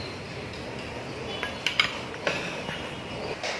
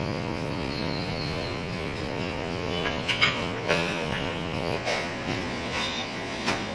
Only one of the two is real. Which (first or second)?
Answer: first